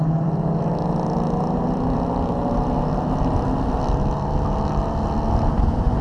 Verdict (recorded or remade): recorded